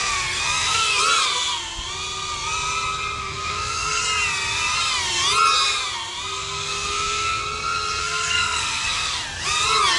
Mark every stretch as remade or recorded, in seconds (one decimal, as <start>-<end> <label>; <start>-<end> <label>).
0.0-1.0 remade; 1.0-3.2 recorded; 3.2-4.0 remade; 4.0-6.3 recorded; 6.3-7.4 remade; 7.4-8.0 recorded; 8.0-9.2 remade; 9.2-10.0 recorded